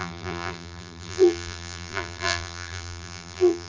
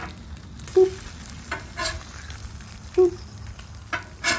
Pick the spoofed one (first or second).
first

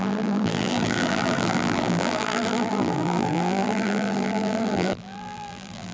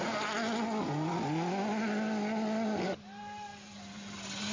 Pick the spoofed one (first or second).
first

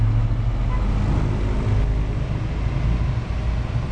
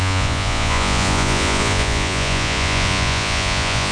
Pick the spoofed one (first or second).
second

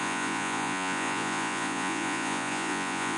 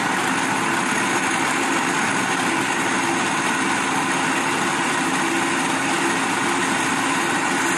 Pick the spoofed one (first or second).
first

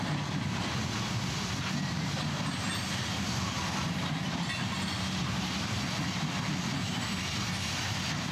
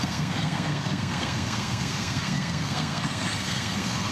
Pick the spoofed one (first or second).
second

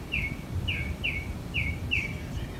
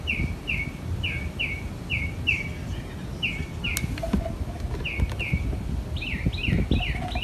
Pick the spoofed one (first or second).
first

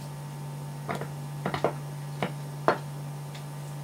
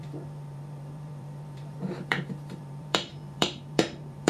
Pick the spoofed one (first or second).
second